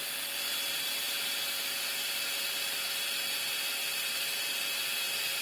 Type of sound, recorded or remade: remade